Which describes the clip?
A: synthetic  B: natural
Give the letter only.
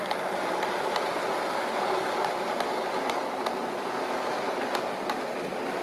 B